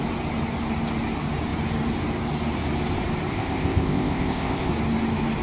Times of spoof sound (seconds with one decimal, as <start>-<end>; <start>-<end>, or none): 3.3-4.7